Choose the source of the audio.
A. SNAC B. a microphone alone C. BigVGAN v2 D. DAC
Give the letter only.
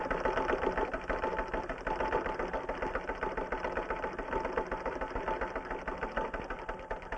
B